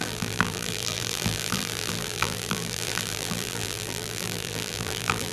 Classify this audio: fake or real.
fake